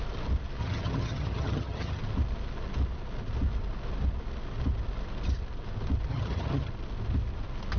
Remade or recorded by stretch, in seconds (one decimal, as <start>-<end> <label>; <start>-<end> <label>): 0.0-0.6 recorded; 0.6-2.0 remade; 2.0-6.1 recorded; 6.1-6.7 remade; 6.7-7.8 recorded